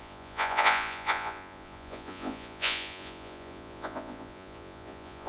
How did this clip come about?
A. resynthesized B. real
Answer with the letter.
A